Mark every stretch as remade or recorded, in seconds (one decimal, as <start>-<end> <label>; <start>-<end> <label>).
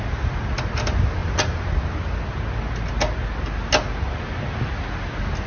0.0-5.5 recorded